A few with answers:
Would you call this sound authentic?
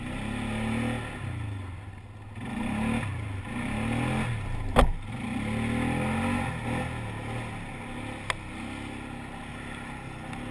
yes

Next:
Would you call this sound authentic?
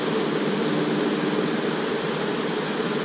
yes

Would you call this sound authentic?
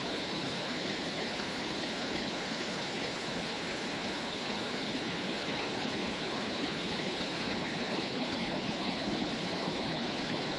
no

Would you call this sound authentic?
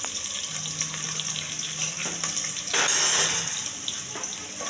yes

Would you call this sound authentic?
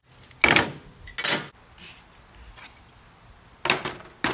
yes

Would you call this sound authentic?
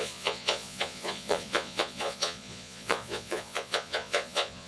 no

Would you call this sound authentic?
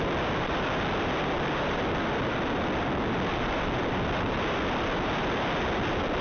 no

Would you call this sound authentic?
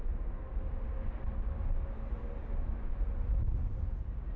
yes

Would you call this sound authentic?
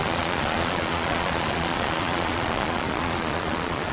no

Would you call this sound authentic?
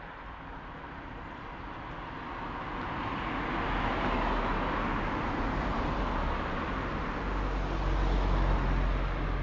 yes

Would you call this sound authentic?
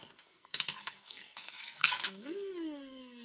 no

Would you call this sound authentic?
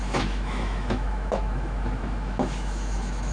no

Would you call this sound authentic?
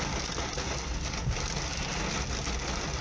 yes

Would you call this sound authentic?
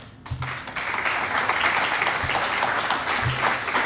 yes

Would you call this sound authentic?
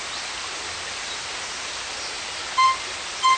yes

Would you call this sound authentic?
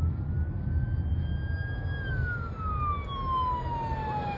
yes